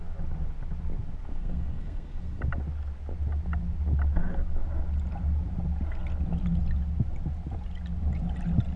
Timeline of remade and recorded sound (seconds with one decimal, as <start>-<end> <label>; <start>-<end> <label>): 0.0-1.3 recorded; 1.3-2.4 remade; 2.4-8.8 recorded